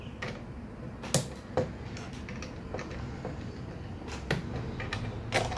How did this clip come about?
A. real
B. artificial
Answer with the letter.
A